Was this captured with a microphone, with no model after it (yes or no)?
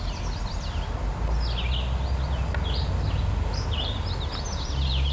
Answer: yes